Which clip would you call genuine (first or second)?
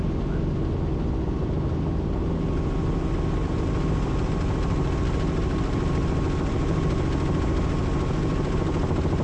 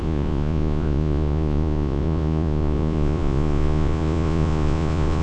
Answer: first